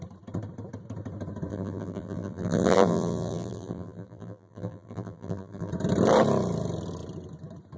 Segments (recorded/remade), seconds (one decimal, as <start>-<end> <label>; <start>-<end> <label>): 0.0-1.5 recorded; 1.5-5.7 remade; 5.7-7.8 recorded